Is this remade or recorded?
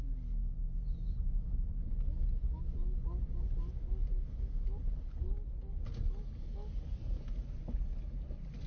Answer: recorded